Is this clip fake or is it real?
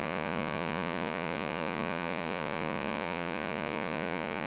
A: fake